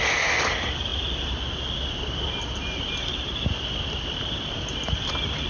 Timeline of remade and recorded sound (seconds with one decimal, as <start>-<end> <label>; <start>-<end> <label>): 0.0-5.5 recorded